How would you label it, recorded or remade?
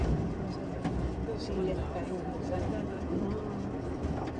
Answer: recorded